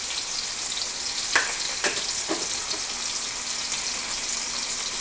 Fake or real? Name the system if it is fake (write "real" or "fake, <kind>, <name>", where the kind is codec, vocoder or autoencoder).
real